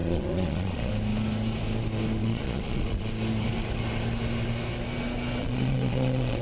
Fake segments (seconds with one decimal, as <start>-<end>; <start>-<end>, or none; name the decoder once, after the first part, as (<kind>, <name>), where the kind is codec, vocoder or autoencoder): 0.0-0.9 (vocoder, Vocos); 2.2-3.1; 5.4-6.4